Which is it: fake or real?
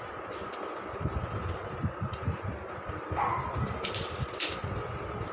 real